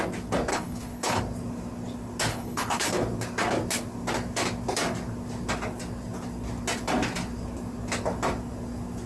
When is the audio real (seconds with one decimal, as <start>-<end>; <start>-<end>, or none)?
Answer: 0.0-0.5; 1.2-2.3; 3.0-9.1